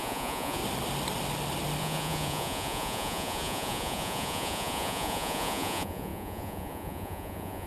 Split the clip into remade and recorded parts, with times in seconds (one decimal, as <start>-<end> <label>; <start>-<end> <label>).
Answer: 0.0-0.6 remade; 0.6-1.8 recorded; 1.8-7.7 remade